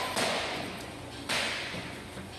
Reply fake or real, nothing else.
fake